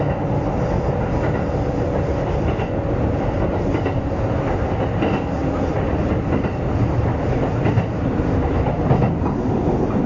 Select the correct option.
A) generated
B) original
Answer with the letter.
B